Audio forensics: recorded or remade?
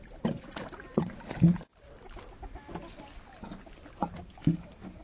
recorded